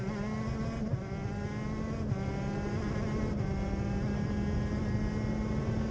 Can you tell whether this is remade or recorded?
recorded